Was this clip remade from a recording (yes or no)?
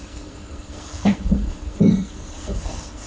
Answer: yes